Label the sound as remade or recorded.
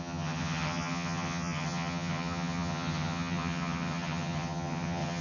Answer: remade